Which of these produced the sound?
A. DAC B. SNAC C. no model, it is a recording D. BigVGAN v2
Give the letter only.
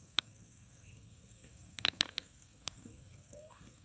B